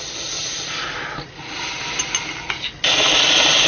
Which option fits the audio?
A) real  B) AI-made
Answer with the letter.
A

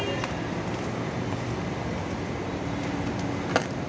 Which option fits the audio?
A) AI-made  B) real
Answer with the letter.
B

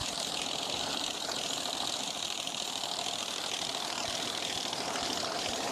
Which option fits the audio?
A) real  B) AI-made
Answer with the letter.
B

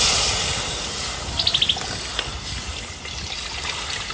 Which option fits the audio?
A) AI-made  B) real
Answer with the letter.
B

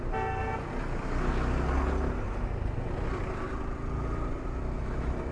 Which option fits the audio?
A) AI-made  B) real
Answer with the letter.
B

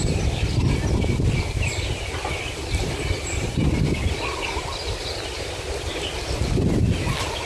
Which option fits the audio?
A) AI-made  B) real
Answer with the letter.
B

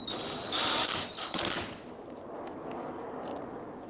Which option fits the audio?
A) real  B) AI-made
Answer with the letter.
A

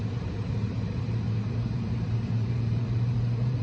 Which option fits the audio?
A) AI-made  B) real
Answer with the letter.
A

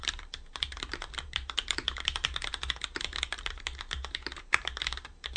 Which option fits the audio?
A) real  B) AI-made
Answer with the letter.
B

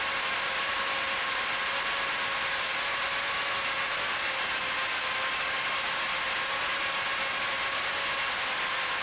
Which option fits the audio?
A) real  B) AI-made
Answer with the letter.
A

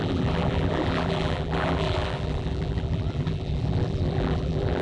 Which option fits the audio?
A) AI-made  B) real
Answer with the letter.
A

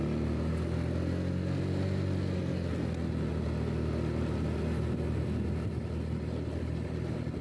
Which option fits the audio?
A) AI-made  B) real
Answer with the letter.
B